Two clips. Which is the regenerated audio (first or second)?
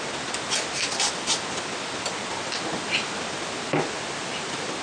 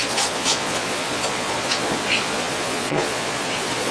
second